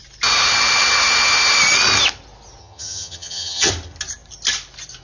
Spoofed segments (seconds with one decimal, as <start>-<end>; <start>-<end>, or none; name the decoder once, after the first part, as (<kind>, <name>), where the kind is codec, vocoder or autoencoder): 2.6-3.7 (vocoder, HiFi-GAN)